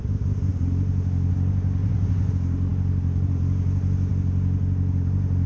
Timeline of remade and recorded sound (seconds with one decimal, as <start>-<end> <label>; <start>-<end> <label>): 0.0-1.8 recorded; 1.8-2.3 remade; 2.3-5.5 recorded